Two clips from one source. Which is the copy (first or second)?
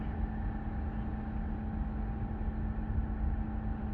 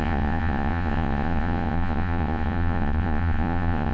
second